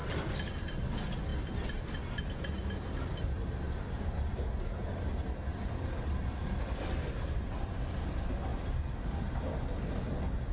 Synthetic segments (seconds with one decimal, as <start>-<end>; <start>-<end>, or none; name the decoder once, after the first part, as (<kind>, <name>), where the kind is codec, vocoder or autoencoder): 8.5-9.4 (vocoder, BigVGAN v2)